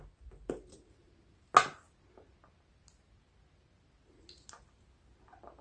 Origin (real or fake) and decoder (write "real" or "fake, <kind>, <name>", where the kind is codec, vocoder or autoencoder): real